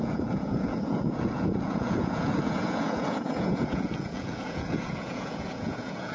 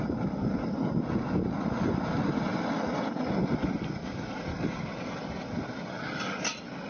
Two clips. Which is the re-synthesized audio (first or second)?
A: first